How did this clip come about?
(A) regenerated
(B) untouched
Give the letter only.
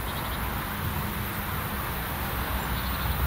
B